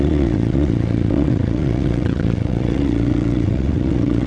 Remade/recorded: remade